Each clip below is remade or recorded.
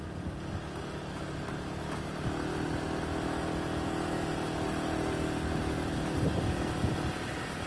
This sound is recorded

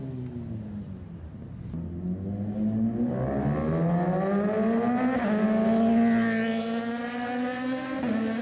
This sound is recorded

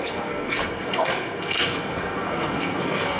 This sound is remade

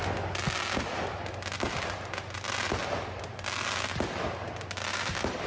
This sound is recorded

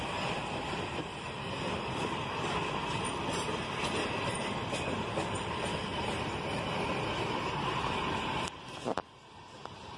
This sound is recorded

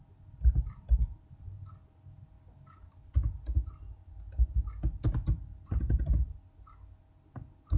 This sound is recorded